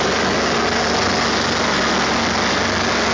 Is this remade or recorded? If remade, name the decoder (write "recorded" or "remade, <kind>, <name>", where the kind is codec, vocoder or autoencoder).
recorded